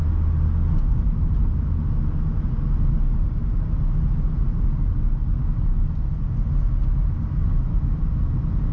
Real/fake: real